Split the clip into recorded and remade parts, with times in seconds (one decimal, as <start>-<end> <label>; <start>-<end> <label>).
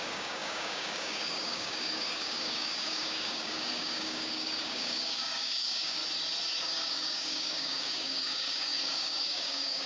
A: 0.0-6.0 remade; 6.0-6.6 recorded; 6.6-9.9 remade